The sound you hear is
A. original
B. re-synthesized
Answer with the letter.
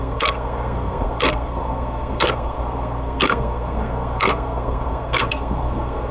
B